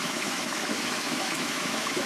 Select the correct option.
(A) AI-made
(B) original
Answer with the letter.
A